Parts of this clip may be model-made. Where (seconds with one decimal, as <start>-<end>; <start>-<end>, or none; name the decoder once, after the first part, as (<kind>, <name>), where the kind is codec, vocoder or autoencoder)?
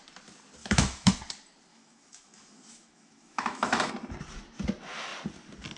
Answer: 0.6-1.1 (autoencoder, DAC-VAE); 1.7-3.9